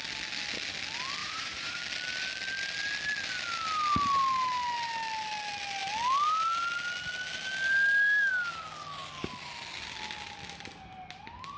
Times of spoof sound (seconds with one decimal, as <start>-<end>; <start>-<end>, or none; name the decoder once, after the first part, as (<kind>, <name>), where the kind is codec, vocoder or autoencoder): 1.2-1.8 (vocoder, Vocos)